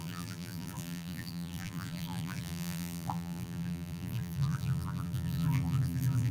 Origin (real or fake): fake